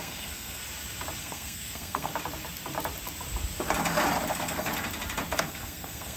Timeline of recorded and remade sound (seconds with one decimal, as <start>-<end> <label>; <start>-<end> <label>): 0.0-0.6 remade; 0.6-1.2 recorded; 1.2-2.1 remade; 2.1-4.3 recorded; 4.3-4.7 remade; 4.7-5.4 recorded; 5.4-6.2 remade